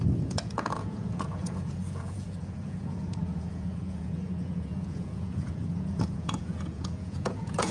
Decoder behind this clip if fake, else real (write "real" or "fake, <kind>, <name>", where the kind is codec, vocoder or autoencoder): fake, vocoder, Vocos